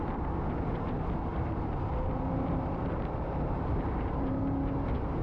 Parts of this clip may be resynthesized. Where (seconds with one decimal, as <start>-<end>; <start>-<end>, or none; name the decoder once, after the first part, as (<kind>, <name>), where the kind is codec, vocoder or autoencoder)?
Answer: 1.3-4.4 (vocoder, BigVGAN v2)

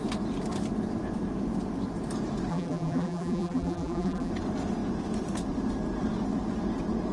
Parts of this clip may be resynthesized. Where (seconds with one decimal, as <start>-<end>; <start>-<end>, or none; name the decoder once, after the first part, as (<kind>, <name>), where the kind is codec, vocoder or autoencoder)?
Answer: 2.5-4.3 (vocoder, BigVGAN v2)

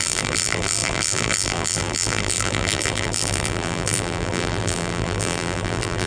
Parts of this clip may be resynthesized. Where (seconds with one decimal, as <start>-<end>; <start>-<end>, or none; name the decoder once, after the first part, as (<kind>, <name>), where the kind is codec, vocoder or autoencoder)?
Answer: 0.0-6.1 (vocoder, BigVGAN v2)

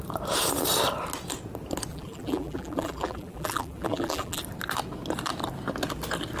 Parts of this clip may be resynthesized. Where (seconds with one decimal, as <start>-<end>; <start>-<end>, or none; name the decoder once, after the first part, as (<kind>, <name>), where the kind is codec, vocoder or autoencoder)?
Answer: 1.9-4.4 (vocoder, BigVGAN v2)